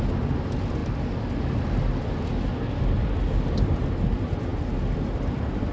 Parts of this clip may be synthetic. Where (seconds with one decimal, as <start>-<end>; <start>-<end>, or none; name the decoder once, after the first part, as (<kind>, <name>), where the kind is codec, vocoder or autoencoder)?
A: none